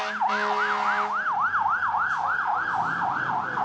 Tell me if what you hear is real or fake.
real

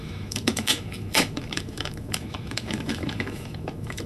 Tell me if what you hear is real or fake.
fake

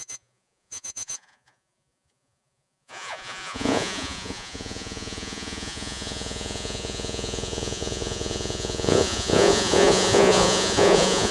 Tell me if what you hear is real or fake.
fake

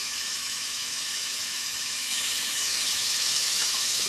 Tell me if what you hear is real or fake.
fake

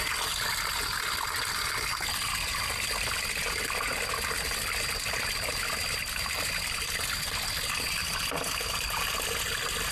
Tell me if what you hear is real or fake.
real